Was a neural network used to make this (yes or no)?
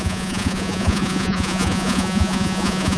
yes